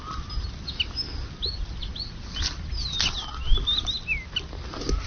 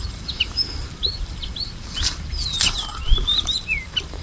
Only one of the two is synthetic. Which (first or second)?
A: second